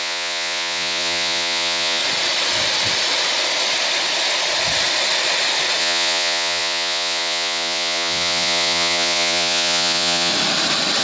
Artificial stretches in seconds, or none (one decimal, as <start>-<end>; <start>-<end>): 0.0-2.0; 5.8-10.3